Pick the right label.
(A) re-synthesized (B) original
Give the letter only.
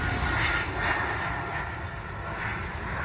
B